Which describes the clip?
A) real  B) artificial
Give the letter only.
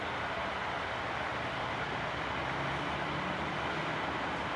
A